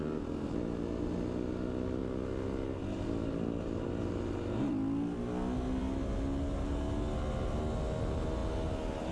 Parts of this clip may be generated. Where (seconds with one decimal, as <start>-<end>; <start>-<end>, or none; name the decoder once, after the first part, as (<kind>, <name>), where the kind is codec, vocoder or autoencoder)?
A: none